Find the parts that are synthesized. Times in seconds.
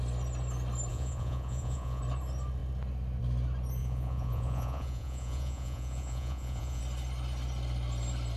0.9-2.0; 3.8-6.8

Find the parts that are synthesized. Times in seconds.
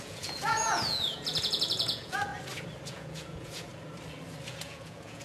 0.0-2.3; 2.9-3.7; 4.5-5.2